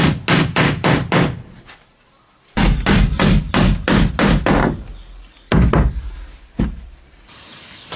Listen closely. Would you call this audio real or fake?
real